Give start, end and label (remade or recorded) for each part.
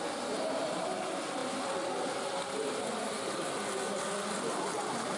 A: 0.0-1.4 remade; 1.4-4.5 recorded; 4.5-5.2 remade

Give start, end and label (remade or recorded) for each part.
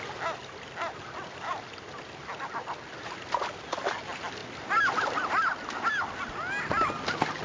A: 0.0-7.4 recorded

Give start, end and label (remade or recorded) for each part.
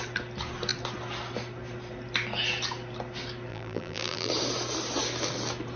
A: 0.0-3.5 recorded; 3.5-4.3 remade; 4.3-5.8 recorded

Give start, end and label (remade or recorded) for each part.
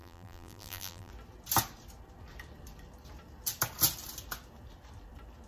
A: 0.0-1.1 remade; 1.1-5.5 recorded